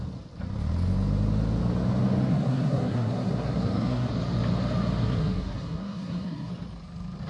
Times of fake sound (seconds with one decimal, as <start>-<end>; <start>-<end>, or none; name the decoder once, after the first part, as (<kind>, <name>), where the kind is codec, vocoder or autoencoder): 2.3-4.1 (codec, SNAC); 5.0-6.5